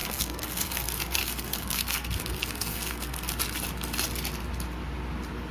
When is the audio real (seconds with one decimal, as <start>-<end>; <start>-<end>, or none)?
3.3-5.5